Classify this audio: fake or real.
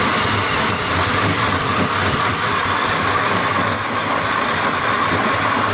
real